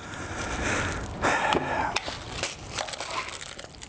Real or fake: fake